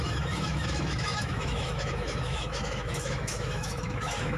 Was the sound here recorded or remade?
remade